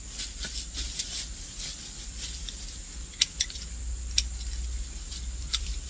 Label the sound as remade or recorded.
recorded